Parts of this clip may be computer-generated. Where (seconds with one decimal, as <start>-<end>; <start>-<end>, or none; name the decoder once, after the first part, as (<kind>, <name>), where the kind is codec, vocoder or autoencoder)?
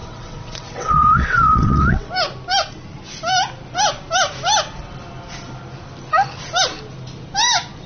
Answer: 0.0-2.1 (vocoder, WaveNeXt)